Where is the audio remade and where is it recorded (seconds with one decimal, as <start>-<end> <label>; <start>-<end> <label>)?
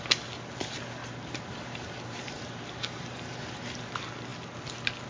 0.0-1.0 recorded; 1.0-3.8 remade; 3.8-5.1 recorded